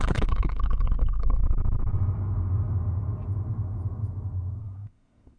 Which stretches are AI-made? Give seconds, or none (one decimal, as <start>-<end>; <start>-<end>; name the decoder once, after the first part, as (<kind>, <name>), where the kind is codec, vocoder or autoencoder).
0.0-1.4 (codec, SNAC); 4.6-5.4